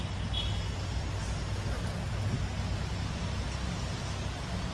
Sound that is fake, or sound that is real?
real